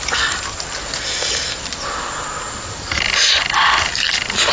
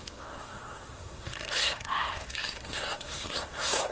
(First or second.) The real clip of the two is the first